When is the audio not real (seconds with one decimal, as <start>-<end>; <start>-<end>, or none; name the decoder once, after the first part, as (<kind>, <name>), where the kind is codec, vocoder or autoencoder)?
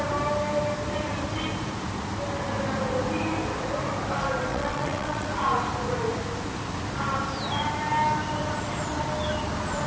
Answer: 4.5-5.3 (vocoder, WaveNeXt)